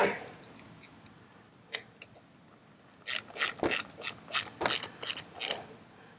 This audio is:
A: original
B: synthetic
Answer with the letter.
A